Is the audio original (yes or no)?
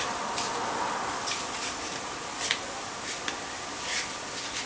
yes